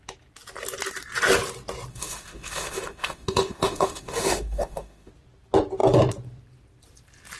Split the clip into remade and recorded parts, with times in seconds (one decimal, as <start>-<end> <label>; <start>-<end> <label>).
0.0-1.9 recorded; 1.9-5.1 remade; 5.1-7.4 recorded